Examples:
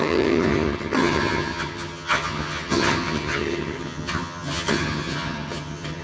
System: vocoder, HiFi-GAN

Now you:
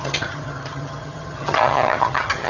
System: vocoder, HiFi-GAN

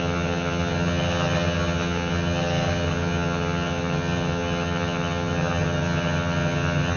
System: vocoder, HiFi-GAN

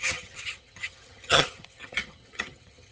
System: vocoder, HiFi-GAN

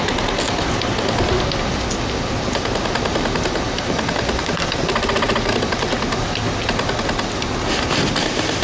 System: none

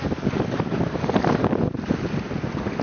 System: none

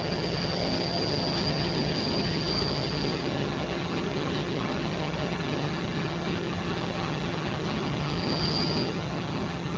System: vocoder, HiFi-GAN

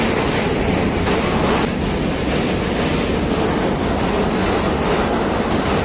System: none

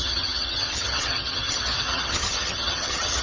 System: vocoder, HiFi-GAN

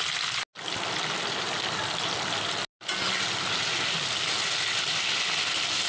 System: none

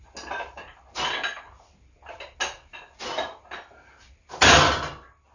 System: none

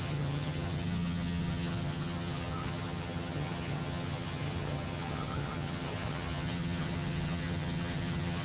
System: vocoder, HiFi-GAN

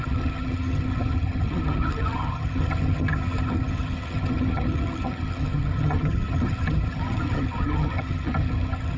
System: vocoder, HiFi-GAN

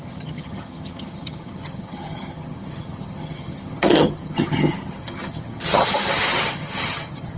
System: vocoder, HiFi-GAN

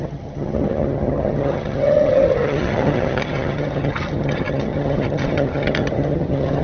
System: vocoder, HiFi-GAN